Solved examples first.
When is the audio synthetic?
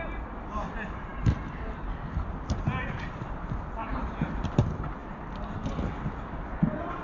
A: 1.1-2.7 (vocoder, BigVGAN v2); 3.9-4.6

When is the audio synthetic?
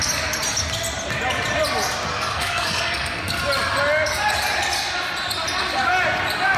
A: 2.1-3.4 (codec, SNAC)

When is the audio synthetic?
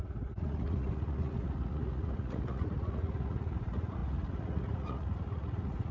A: 0.0-5.9 (vocoder, Vocos)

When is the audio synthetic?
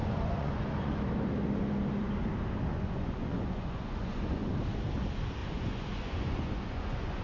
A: 0.0-1.0 (vocoder, Vocos); 2.7-4.5; 5.4-7.2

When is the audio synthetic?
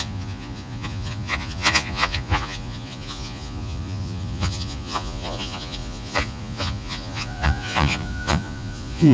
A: 0.0-9.1 (vocoder, Vocos)